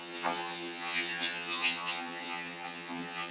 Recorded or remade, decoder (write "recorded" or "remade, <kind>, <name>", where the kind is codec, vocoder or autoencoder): remade, vocoder, HiFi-GAN